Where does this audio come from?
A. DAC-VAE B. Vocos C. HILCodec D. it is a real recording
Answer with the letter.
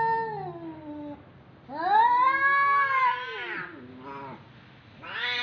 D